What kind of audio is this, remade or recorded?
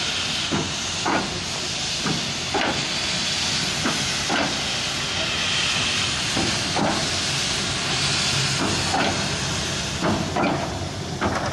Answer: recorded